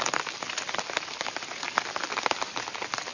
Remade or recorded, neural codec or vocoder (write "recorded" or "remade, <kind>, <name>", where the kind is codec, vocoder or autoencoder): recorded